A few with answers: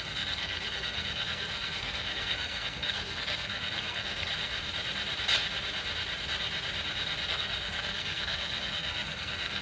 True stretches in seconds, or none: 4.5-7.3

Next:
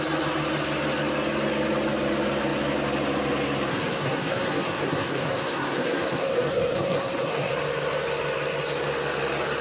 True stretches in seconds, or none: 0.0-3.7; 7.5-9.6